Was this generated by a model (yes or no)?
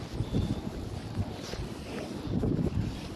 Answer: no